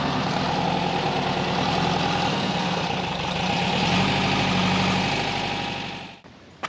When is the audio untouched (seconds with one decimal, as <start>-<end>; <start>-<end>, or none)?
0.4-2.3; 2.8-6.7